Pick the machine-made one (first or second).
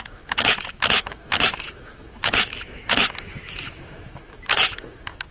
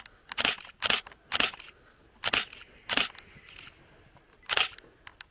first